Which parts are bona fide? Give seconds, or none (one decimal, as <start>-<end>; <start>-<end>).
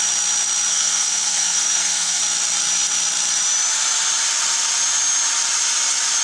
0.0-0.7; 2.2-6.2